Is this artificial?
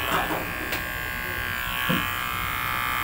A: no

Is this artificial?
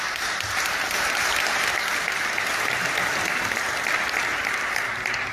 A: no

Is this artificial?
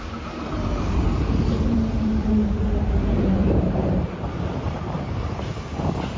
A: yes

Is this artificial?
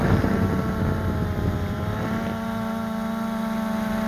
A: no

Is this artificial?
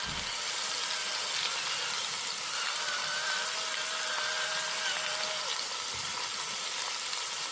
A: no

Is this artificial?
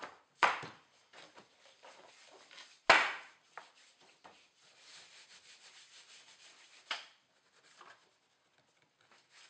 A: no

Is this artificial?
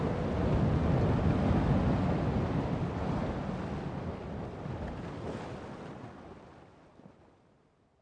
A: no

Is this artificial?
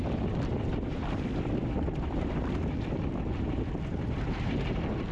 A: yes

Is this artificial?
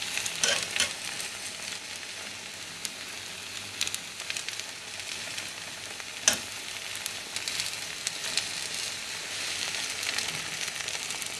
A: no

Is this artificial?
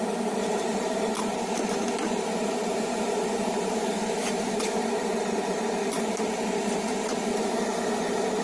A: yes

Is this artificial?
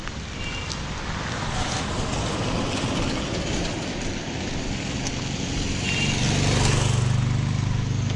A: no